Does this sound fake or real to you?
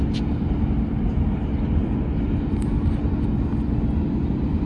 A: real